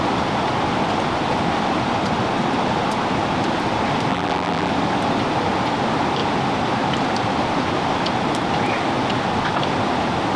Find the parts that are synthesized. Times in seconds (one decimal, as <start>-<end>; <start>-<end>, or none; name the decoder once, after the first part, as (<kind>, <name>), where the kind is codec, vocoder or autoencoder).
4.1-4.7 (vocoder, BigVGAN v2)